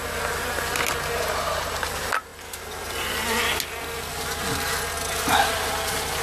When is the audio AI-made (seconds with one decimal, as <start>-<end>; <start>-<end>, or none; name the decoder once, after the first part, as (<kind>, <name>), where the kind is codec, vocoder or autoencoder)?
none